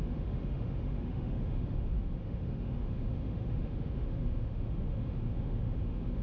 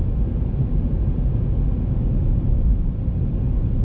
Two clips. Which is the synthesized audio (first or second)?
first